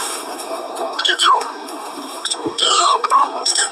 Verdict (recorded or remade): remade